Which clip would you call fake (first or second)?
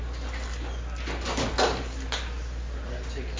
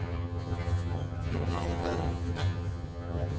second